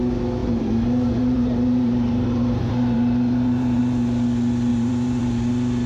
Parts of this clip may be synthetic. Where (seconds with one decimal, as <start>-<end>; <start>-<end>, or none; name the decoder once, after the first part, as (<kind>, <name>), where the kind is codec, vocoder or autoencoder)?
0.4-3.8 (vocoder, BigVGAN v2); 4.7-5.2